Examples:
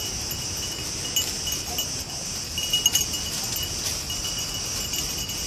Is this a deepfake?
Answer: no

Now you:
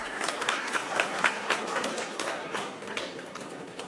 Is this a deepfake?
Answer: yes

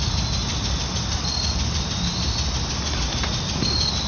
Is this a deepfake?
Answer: no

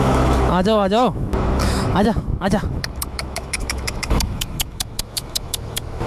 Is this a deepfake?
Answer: yes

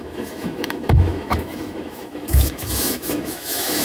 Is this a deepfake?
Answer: yes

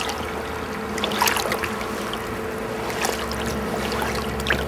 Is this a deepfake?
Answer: no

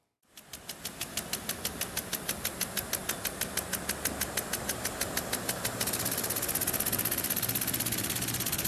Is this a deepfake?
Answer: no